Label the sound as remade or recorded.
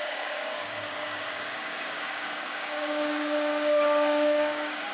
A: remade